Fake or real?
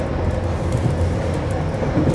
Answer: real